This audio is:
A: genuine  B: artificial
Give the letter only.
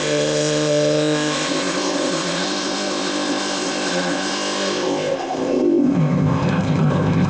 B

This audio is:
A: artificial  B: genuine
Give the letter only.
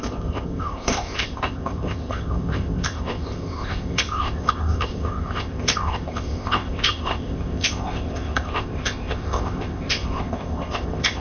A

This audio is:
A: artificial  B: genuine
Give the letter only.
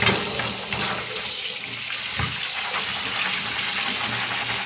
B